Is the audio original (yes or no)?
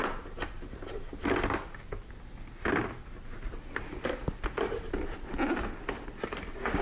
yes